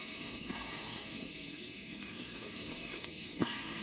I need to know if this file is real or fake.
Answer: fake